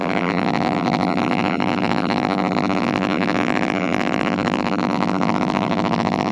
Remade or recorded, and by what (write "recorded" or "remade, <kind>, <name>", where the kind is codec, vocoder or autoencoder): remade, vocoder, BigVGAN v2